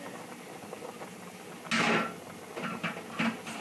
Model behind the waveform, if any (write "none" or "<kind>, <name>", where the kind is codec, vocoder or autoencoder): none